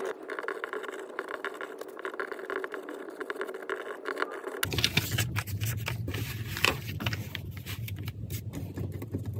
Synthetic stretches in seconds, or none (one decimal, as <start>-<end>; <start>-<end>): none

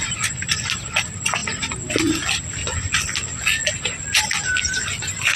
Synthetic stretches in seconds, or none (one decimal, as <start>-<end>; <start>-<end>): none

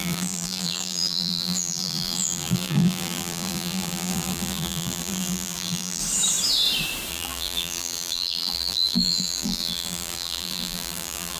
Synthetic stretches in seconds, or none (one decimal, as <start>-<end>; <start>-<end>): 0.0-6.0; 7.1-11.4

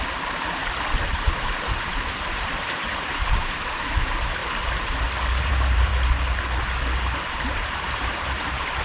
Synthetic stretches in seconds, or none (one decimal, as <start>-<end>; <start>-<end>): 0.0-0.6; 1.1-4.4; 5.4-5.9; 7.3-8.8

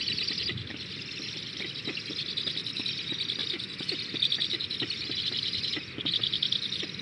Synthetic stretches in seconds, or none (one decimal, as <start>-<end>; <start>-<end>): none

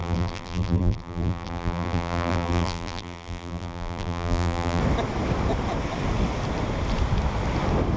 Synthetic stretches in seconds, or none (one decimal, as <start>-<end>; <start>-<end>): 0.0-4.8

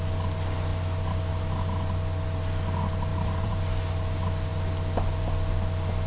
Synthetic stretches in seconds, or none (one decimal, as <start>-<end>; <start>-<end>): 3.1-3.6

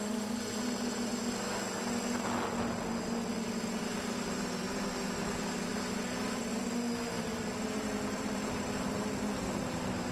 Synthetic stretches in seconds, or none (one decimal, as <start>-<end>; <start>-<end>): 0.0-1.1; 3.3-6.5; 7.2-10.1